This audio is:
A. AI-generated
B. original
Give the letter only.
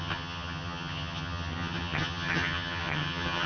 A